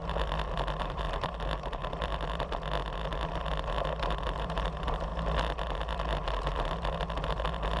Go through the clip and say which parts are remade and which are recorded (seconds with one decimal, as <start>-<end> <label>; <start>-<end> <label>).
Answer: 0.0-0.8 recorded; 0.8-1.8 remade; 1.8-4.4 recorded; 4.4-5.1 remade; 5.1-7.8 recorded